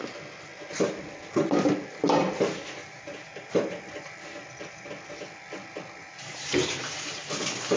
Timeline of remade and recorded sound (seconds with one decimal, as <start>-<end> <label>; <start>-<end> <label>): 0.0-2.8 recorded; 2.8-3.8 remade; 3.8-6.0 recorded; 6.0-7.1 remade; 7.1-7.8 recorded

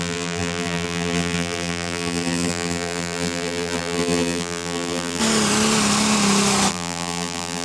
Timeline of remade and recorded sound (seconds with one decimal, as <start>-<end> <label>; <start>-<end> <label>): 0.0-5.2 remade; 5.2-6.7 recorded; 6.7-7.6 remade